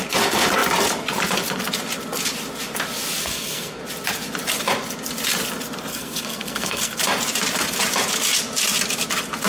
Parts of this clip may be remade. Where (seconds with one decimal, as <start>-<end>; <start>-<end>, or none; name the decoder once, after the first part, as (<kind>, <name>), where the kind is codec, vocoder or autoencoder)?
3.2-3.8 (codec, SNAC); 5.9-7.0